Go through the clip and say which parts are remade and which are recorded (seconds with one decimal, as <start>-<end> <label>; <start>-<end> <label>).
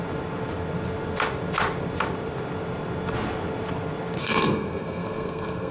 0.0-4.2 recorded; 4.2-5.7 remade